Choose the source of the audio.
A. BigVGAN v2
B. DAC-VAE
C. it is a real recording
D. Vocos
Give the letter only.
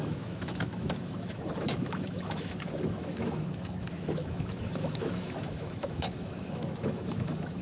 B